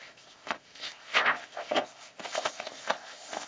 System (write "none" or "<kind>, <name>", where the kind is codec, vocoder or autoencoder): codec, ZipCodec